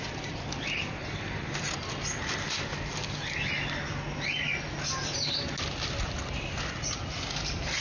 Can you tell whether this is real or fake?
real